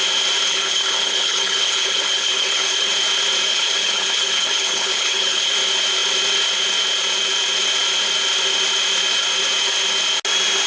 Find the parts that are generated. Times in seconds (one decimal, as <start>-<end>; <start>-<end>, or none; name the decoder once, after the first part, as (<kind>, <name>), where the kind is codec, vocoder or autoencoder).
0.5-2.9 (codec, HILCodec); 3.5-5.5